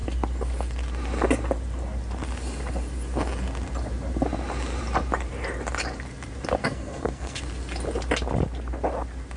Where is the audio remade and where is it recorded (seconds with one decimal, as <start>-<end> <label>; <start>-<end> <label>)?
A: 0.0-6.6 recorded; 6.6-7.4 remade; 7.4-9.4 recorded